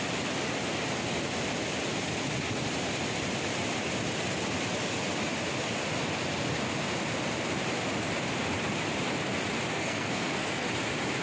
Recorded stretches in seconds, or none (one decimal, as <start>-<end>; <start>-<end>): 0.0-9.7; 10.7-11.2